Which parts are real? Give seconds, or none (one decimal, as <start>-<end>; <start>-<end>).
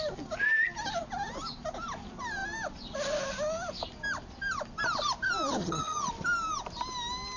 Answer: 0.0-5.6; 6.1-7.4